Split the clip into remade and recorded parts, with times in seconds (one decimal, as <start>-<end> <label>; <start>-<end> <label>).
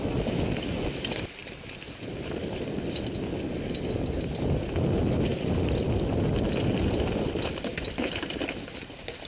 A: 0.0-9.3 recorded